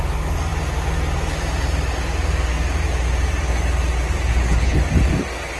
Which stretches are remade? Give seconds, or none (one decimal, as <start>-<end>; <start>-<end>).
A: 4.3-4.8